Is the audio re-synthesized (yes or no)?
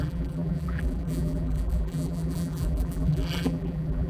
yes